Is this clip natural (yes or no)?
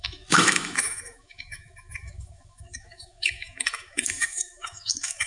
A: no